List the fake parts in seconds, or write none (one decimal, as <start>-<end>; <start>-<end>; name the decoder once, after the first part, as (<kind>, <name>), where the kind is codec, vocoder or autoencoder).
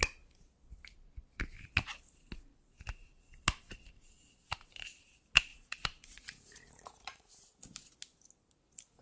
5.5-7.3 (vocoder, Vocos)